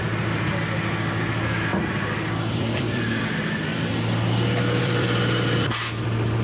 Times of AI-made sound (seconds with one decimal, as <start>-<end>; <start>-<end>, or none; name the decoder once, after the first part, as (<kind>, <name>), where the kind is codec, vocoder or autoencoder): 0.0-1.7 (vocoder, BigVGAN v2); 2.3-3.9; 4.8-6.4